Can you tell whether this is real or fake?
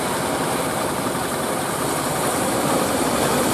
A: real